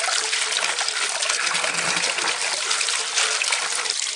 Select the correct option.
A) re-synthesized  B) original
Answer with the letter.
B